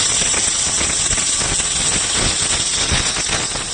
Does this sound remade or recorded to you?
recorded